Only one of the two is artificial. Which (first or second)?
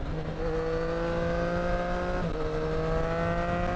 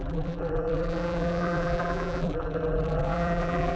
second